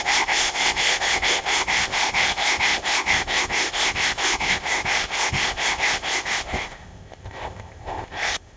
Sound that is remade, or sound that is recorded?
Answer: remade